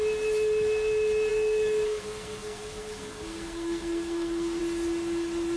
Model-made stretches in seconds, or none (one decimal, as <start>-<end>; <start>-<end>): 1.3-4.6

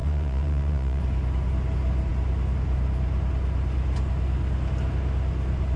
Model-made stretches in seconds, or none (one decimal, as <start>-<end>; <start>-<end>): 0.0-1.0

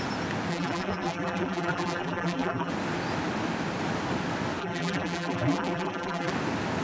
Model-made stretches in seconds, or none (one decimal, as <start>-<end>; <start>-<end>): 0.5-2.7; 4.6-6.3

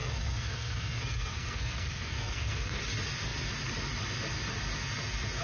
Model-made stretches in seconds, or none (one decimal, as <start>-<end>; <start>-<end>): 0.0-2.8

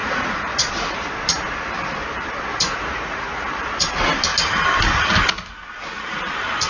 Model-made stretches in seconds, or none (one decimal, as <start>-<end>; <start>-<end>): 0.0-1.0; 2.5-3.4

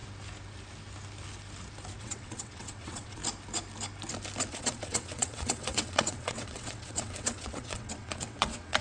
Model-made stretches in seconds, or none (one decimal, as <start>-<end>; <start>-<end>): 2.0-3.2; 4.5-8.8

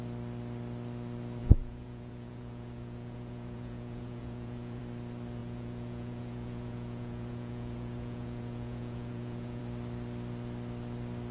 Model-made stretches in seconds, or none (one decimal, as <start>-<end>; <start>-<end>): 1.4-4.8; 5.4-9.6

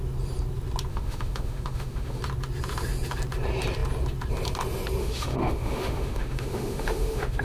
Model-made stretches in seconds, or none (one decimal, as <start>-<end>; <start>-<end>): 0.9-2.2; 5.0-7.4